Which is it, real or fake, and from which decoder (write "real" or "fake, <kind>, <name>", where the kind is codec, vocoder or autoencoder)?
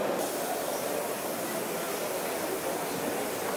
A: real